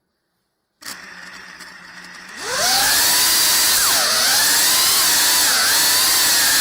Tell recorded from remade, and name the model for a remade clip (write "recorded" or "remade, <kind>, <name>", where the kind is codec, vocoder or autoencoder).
recorded